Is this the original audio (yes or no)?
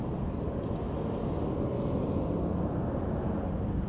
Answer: yes